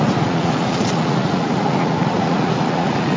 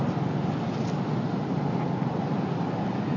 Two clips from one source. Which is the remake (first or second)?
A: first